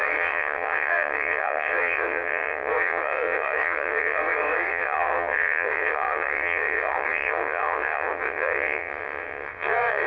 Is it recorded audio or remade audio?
remade